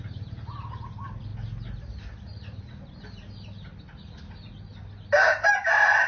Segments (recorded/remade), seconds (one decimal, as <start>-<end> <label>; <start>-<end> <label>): 0.0-6.1 recorded